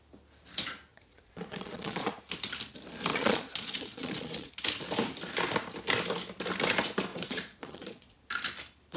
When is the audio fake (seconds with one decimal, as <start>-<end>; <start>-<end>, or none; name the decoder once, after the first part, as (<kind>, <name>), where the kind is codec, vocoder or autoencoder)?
0.9-2.2 (vocoder, Vocos); 3.1-4.5; 7.1-8.3